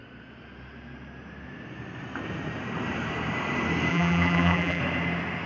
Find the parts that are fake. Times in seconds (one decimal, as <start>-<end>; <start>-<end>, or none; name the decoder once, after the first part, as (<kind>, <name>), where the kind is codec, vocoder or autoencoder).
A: 3.9-4.8 (vocoder, BigVGAN v2)